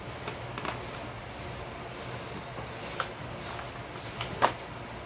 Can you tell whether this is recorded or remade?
recorded